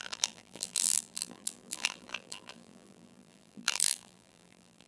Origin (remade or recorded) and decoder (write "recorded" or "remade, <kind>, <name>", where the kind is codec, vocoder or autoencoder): remade, vocoder, BigVGAN v2